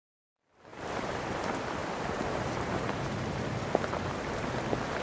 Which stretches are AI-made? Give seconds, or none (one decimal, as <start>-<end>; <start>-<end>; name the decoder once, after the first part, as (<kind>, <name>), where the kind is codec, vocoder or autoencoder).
0.7-1.2 (vocoder, BigVGAN v2); 1.8-3.4